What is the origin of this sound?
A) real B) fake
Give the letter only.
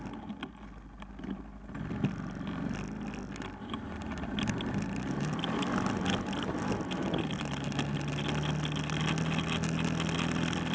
A